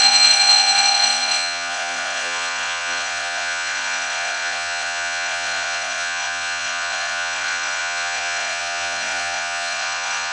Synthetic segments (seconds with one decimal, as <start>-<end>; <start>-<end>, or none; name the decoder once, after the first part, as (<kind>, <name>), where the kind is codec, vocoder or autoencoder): 0.0-10.3 (vocoder, Vocos)